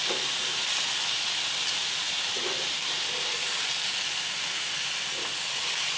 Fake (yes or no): yes